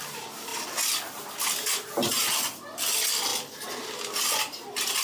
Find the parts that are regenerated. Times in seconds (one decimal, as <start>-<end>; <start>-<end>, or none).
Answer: none